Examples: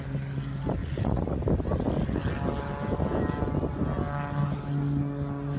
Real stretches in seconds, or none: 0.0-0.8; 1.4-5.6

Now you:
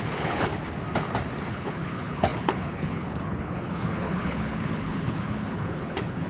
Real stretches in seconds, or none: 0.5-1.5